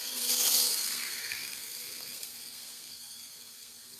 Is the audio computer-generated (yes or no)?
yes